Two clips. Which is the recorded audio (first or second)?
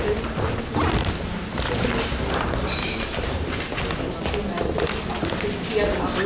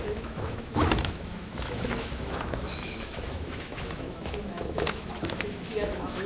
first